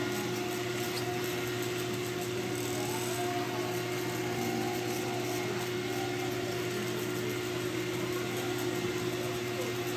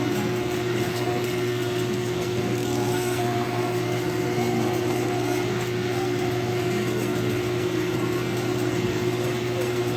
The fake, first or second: second